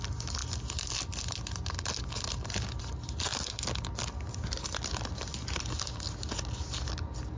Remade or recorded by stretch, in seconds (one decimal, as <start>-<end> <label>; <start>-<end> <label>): 0.0-7.4 recorded